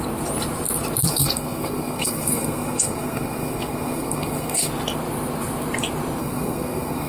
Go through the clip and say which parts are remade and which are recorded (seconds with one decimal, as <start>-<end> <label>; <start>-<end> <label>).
0.0-1.1 recorded; 1.1-4.7 remade; 4.7-6.2 recorded; 6.2-7.1 remade